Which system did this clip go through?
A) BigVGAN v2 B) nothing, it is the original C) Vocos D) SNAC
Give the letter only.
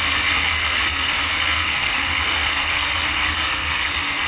D